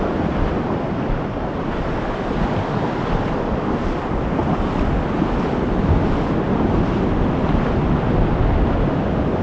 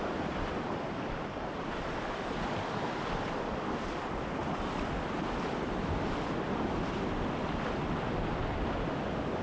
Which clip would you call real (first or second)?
first